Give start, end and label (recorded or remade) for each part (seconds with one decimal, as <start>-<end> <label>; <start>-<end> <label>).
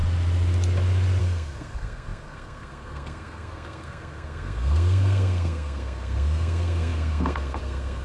0.0-1.2 recorded; 1.2-8.0 remade